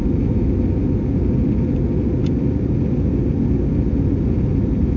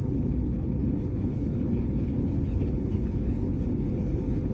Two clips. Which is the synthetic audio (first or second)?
second